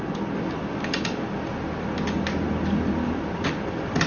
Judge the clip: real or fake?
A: real